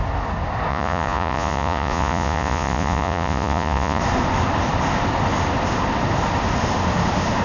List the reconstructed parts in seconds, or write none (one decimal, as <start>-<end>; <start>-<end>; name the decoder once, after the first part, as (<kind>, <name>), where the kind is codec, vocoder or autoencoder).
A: 0.7-4.0 (vocoder, Vocos)